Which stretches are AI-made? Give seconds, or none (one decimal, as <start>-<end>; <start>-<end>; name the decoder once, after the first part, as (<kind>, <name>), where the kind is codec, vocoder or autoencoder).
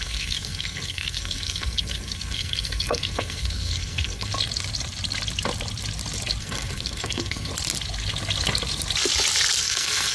0.0-4.3 (codec, SNAC); 6.4-7.5; 9.6-10.1